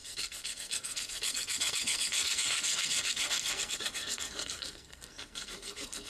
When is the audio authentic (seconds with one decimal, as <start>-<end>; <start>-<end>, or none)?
none